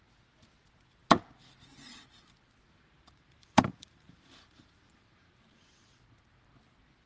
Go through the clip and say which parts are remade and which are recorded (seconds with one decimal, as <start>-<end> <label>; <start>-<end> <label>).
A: 0.0-2.8 recorded; 2.8-6.0 remade; 6.0-7.1 recorded